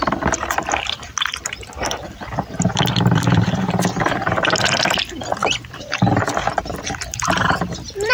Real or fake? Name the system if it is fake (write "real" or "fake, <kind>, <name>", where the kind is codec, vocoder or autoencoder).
fake, vocoder, BigVGAN v2